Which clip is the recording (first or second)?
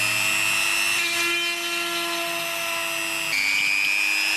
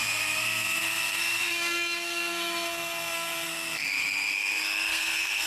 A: first